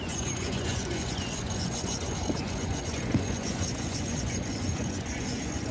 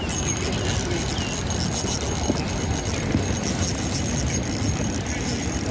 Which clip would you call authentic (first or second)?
second